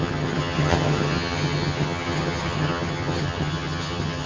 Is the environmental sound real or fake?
fake